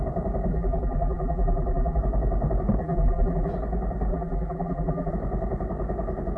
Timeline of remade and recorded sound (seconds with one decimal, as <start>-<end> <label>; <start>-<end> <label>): 0.0-0.5 recorded; 0.5-2.0 remade; 2.0-2.8 recorded; 2.8-3.5 remade; 3.5-4.1 recorded; 4.1-5.1 remade; 5.1-6.4 recorded

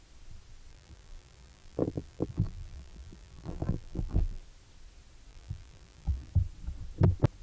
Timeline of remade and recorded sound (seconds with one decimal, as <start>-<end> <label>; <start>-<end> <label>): 0.0-0.7 recorded; 0.7-4.4 remade; 4.4-5.3 recorded; 5.3-6.3 remade; 6.3-7.4 recorded

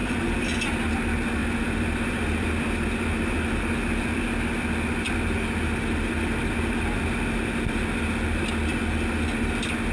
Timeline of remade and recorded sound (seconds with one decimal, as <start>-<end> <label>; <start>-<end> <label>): 0.0-0.7 remade; 0.7-1.4 recorded; 1.4-3.6 remade; 3.6-9.9 recorded